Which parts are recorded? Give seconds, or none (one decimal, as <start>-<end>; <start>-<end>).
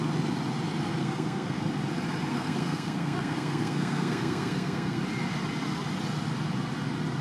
0.0-1.0; 1.6-2.3; 5.0-7.2